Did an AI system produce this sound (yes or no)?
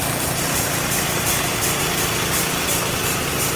no